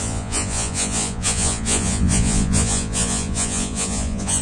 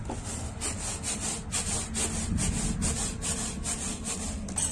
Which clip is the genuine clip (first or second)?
second